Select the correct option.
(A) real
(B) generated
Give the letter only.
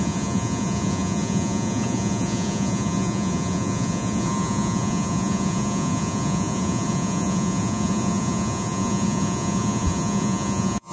B